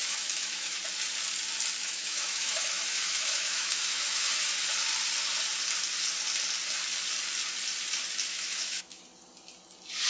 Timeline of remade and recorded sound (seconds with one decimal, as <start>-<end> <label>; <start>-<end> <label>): 0.0-0.8 remade; 0.8-1.8 recorded; 1.8-4.3 remade; 4.3-8.3 recorded; 8.3-9.0 remade; 9.0-10.1 recorded